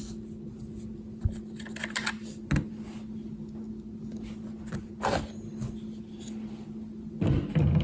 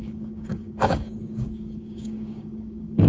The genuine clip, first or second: first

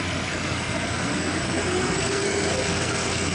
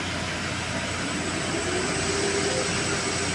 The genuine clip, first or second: second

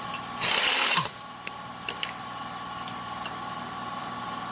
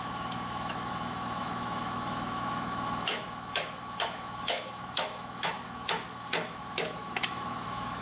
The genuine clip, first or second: first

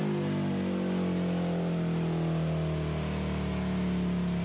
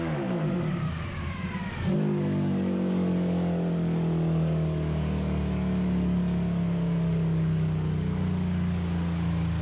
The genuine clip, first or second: first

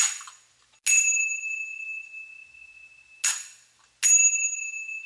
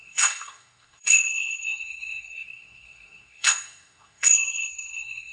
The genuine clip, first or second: first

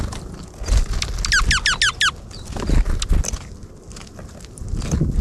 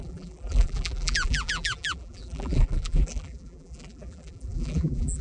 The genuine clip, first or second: first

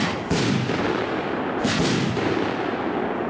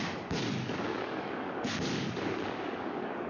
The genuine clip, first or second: first